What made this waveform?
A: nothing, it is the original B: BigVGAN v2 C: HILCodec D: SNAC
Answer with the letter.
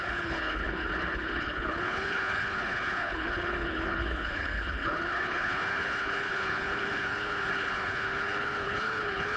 C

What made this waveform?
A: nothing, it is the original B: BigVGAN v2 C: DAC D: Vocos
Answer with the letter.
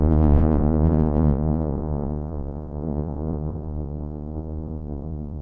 D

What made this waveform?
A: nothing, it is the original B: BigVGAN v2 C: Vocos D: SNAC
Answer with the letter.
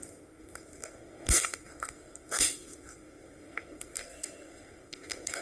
D